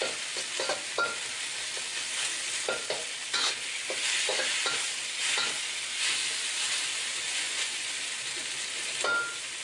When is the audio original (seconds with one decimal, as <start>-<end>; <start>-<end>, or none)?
0.0-7.3; 7.9-9.6

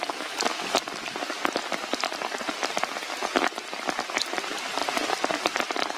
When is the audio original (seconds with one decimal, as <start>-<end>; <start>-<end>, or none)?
0.0-6.0

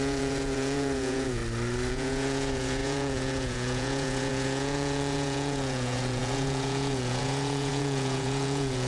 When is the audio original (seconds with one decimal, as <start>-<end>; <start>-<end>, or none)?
1.4-1.9

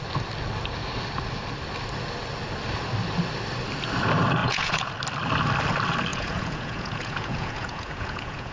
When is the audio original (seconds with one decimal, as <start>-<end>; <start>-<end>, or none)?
0.0-4.4; 4.9-6.1

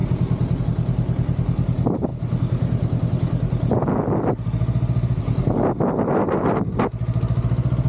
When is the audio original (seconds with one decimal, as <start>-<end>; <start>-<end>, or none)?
0.0-7.9

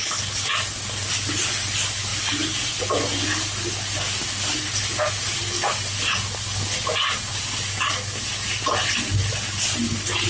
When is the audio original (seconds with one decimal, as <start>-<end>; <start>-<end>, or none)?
0.0-10.3